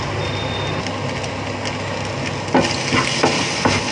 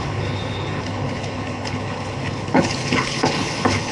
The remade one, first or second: second